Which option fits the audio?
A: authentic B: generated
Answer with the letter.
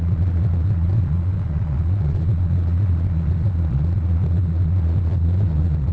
B